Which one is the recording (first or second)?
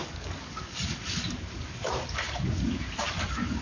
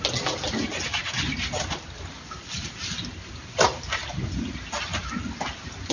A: second